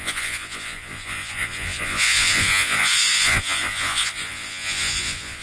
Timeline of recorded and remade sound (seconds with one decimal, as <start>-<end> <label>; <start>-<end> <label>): 0.0-5.4 remade